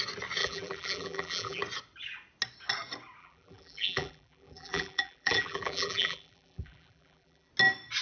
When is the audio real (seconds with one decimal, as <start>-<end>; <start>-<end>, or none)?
0.0-0.4; 1.6-3.2; 7.5-8.0